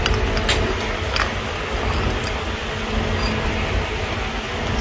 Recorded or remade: recorded